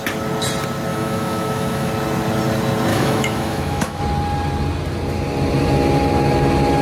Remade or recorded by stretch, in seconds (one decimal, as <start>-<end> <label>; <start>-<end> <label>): 0.0-0.9 recorded; 0.9-1.9 remade; 1.9-2.9 recorded; 2.9-4.0 remade; 4.0-6.8 recorded